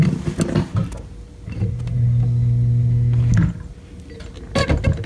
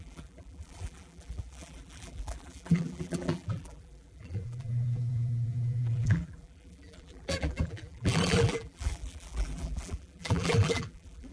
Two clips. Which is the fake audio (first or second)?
second